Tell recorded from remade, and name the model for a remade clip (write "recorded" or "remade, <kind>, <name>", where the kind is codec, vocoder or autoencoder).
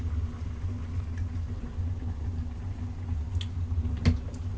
recorded